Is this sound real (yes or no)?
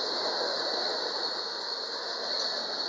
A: yes